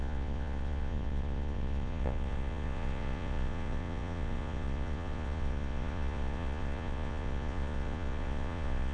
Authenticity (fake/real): fake